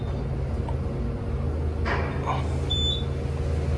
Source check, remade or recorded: recorded